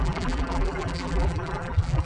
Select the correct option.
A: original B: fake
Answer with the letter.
B